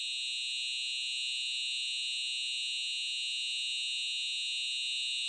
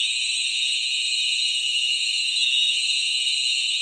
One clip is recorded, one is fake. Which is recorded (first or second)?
first